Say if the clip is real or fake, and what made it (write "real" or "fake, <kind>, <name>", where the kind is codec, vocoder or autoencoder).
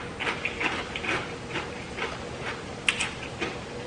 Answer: real